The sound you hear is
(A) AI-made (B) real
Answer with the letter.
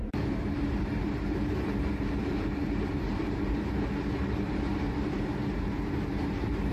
A